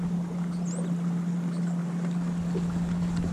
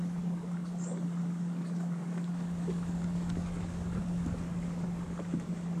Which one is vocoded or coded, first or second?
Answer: second